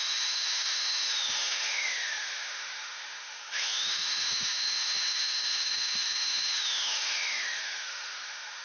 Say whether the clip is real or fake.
fake